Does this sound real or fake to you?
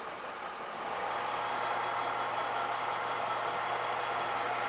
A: real